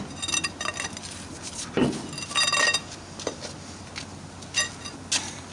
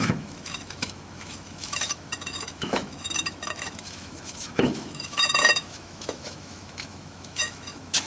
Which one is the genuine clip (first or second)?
first